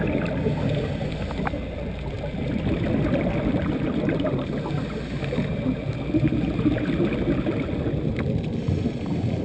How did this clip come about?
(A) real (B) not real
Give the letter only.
A